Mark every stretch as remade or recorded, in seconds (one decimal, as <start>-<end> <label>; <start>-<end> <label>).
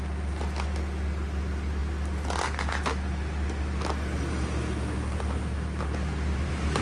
0.0-6.8 recorded